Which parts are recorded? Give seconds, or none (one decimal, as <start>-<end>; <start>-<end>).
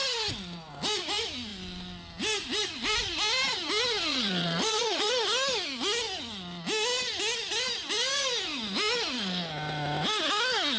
0.0-4.1; 5.1-10.8